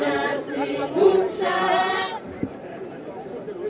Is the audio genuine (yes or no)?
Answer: no